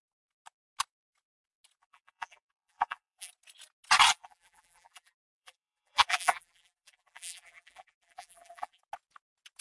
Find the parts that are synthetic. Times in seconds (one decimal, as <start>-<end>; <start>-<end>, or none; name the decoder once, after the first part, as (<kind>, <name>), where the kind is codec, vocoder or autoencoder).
1.8-3.3 (vocoder, BigVGAN v2); 4.1-8.8

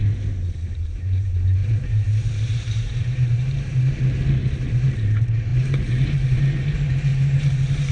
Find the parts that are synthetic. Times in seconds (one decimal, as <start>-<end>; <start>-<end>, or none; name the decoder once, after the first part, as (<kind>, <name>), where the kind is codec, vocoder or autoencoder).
1.6-4.0 (vocoder, BigVGAN v2); 5.5-6.4; 7.1-7.9